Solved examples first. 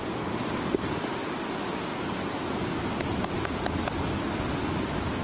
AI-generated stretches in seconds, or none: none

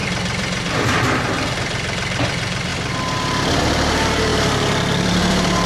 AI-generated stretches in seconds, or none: 0.0-2.7 (vocoder, BigVGAN v2); 3.6-5.7

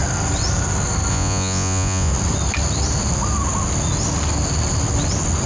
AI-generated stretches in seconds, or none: 1.1-2.1 (vocoder, Vocos)

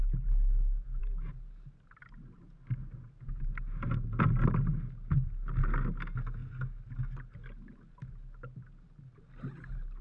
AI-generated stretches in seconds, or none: none

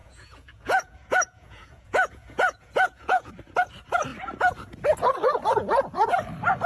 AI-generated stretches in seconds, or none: 0.0-3.3 (vocoder, Vocos)

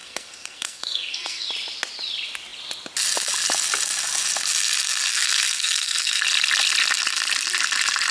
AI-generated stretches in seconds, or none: 0.0-1.5 (codec, SNAC); 5.1-6.2

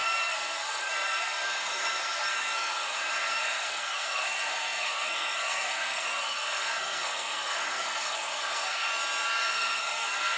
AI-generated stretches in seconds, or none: 0.0-8.9 (codec, SNAC); 9.5-10.4